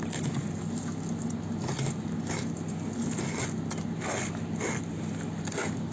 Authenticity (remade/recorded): recorded